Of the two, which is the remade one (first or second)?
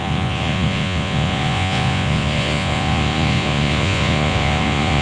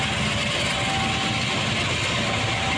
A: first